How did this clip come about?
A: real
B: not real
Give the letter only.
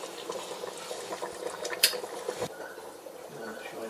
B